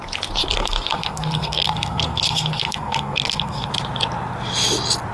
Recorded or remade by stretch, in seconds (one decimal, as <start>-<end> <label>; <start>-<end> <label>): 0.0-0.6 recorded; 0.6-3.7 remade; 3.7-5.1 recorded